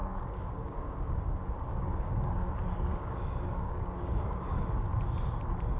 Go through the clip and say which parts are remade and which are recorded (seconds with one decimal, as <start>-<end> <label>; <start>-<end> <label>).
0.0-2.5 remade; 2.5-2.9 recorded; 2.9-4.6 remade; 4.6-5.8 recorded